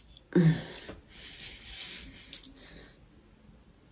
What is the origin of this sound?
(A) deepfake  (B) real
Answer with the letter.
B